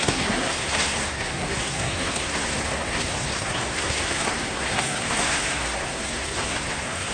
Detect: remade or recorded remade